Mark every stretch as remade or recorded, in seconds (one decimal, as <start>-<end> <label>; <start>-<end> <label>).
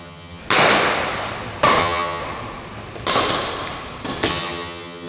0.0-0.4 remade; 0.4-1.8 recorded; 1.8-2.2 remade; 2.2-4.3 recorded; 4.3-5.1 remade